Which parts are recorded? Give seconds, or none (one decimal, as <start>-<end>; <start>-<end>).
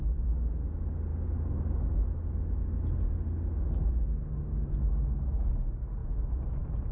0.0-6.9